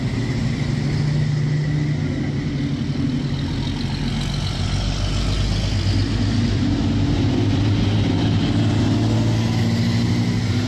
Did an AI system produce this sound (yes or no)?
no